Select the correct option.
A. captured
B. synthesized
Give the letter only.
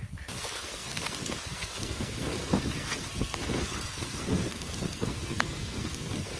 B